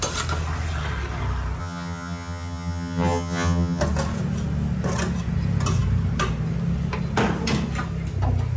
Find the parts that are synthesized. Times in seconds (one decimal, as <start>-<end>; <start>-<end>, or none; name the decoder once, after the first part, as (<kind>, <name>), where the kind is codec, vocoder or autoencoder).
1.6-3.8 (vocoder, HiFi-GAN)